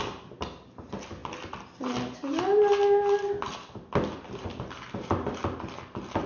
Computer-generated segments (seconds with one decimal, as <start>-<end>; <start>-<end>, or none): none